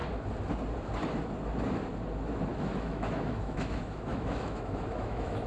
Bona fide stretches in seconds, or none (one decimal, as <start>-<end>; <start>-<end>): 0.0-2.5